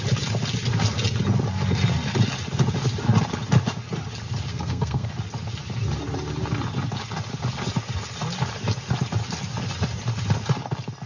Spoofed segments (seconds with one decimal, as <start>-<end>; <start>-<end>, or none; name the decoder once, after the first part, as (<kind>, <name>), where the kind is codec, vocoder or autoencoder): 4.5-5.1 (codec, SNAC)